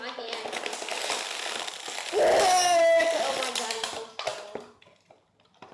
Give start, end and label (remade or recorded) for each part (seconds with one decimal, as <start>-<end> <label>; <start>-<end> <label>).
0.0-5.7 recorded